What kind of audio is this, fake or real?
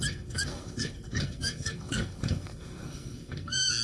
fake